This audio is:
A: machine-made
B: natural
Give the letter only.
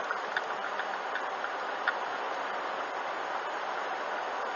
B